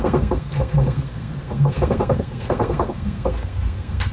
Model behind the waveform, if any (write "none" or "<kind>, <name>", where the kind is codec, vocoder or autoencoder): codec, SNAC